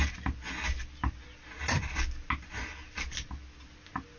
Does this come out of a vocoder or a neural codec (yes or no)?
no